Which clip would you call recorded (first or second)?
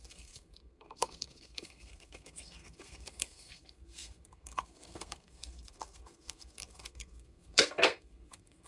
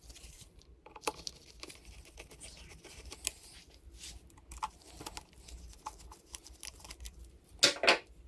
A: second